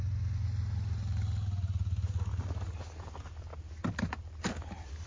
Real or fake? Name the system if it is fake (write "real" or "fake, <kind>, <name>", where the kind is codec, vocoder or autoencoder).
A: real